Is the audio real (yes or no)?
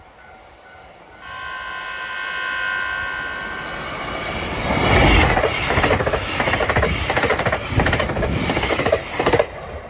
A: yes